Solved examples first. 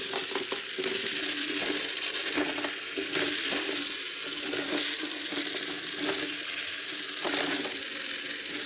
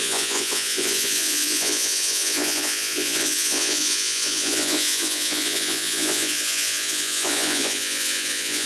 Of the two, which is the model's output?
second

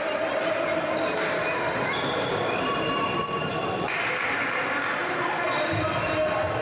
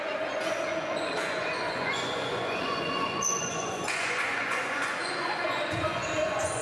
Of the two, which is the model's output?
second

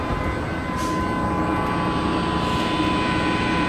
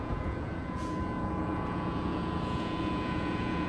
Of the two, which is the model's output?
second